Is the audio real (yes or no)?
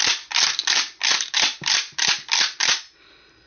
yes